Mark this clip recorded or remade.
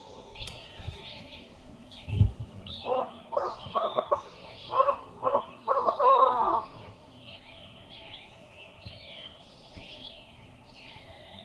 remade